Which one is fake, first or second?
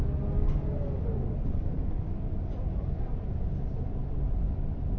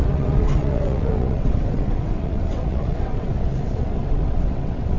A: second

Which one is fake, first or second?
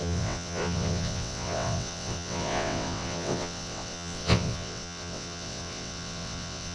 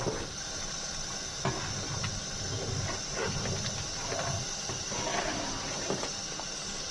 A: first